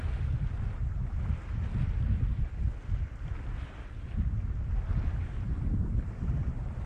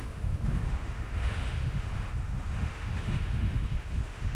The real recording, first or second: first